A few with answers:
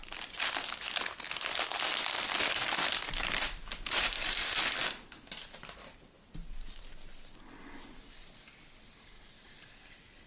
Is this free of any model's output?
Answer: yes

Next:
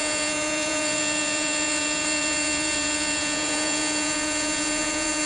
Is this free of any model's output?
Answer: no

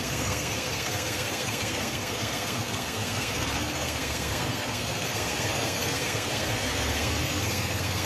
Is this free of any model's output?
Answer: no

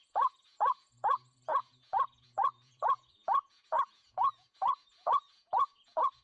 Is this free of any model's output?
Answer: no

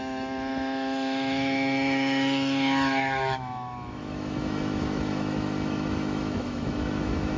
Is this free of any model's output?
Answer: no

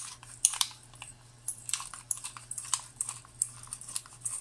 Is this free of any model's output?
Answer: no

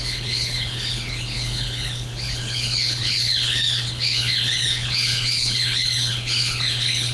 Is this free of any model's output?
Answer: no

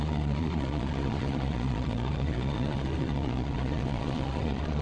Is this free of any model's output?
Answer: no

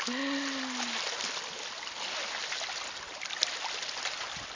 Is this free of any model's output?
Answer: yes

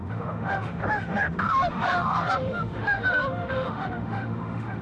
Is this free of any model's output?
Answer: no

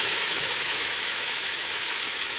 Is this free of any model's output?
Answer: no